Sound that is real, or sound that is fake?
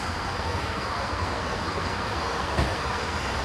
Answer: fake